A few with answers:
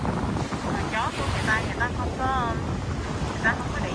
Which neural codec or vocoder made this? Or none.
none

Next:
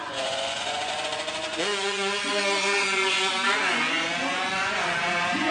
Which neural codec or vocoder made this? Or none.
vocoder, Vocos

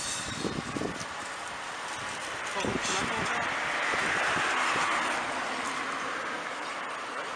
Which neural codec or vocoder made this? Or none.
none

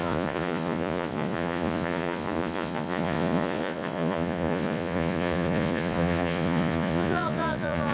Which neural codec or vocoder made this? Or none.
vocoder, Vocos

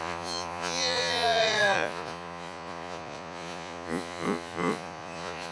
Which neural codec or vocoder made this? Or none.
vocoder, Vocos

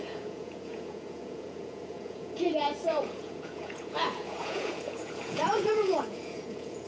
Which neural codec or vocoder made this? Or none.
vocoder, Vocos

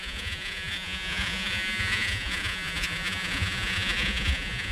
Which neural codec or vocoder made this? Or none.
vocoder, Vocos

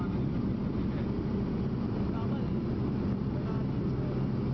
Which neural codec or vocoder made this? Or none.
none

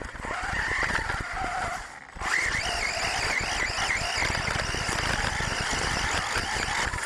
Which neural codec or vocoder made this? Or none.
none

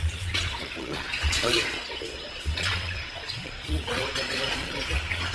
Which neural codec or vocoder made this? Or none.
vocoder, Vocos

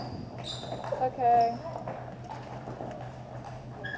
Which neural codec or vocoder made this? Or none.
none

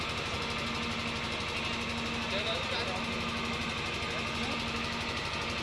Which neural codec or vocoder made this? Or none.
none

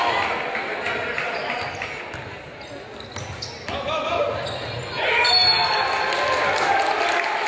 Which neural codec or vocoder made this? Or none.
none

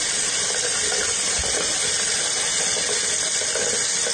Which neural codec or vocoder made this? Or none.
none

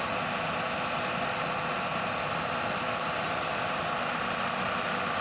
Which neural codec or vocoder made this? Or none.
none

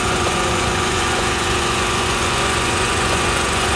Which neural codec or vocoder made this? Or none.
vocoder, Vocos